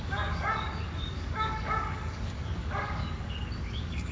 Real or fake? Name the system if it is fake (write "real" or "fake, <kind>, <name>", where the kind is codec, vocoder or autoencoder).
fake, codec, DAC